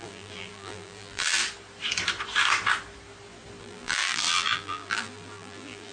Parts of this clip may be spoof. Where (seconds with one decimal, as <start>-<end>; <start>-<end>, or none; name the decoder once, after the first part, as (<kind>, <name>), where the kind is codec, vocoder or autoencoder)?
0.0-1.4 (vocoder, BigVGAN v2); 3.6-5.9

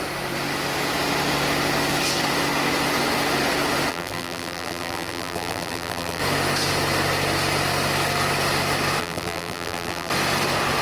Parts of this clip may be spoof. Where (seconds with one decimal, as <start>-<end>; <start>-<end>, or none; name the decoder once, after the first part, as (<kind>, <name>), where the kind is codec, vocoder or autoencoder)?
3.9-6.2 (vocoder, BigVGAN v2); 9.0-10.1

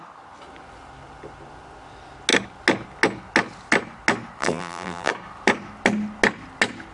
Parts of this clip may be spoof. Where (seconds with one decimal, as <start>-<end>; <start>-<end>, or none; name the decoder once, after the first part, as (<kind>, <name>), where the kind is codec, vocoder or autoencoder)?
4.4-5.1 (vocoder, BigVGAN v2)